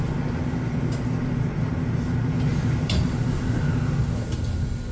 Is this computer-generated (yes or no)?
no